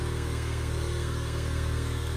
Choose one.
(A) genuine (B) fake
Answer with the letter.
B